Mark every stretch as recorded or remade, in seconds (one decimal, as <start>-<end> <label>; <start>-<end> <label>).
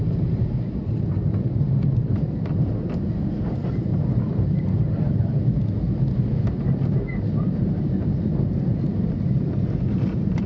0.0-0.8 remade; 0.8-1.6 recorded; 1.6-3.9 remade; 3.9-7.2 recorded; 7.2-8.3 remade; 8.3-9.8 recorded; 9.8-10.5 remade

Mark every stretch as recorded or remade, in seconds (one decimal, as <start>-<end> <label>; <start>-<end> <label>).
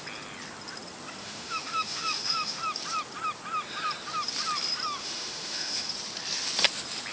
0.0-1.2 recorded; 1.2-2.6 remade; 2.6-5.0 recorded; 5.0-5.9 remade; 5.9-7.1 recorded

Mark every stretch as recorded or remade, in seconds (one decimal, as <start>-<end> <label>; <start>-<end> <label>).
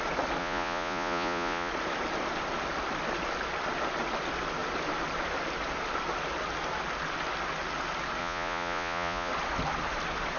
0.0-0.4 recorded; 0.4-1.7 remade; 1.7-8.2 recorded; 8.2-9.3 remade; 9.3-10.4 recorded